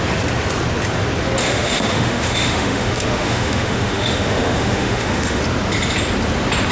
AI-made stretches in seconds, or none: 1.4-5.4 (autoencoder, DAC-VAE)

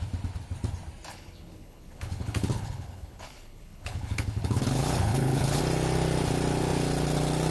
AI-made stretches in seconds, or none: 1.1-5.6 (codec, HILCodec)